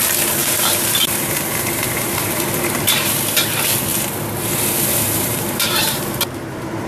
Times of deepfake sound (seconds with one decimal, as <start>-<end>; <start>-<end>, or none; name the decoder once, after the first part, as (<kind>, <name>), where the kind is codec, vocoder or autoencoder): 0.4-2.4 (vocoder, BigVGAN v2); 3.9-4.5; 4.9-6.9